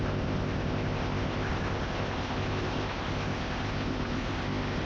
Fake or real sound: fake